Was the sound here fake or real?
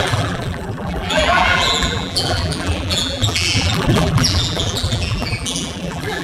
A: fake